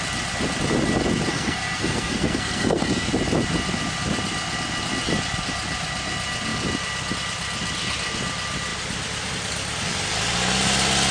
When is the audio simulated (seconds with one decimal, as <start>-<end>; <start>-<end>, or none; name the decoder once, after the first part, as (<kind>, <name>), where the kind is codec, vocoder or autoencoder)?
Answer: 1.3-3.1 (codec, SNAC)